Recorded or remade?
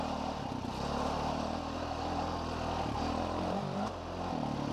recorded